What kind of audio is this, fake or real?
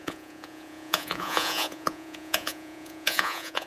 fake